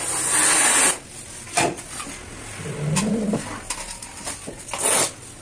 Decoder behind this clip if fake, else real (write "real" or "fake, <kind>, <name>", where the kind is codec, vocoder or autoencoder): real